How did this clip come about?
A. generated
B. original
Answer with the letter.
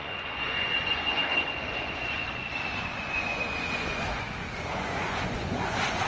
A